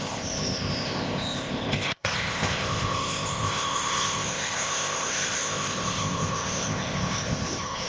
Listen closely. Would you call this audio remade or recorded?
remade